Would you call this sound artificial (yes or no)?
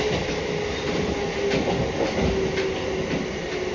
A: no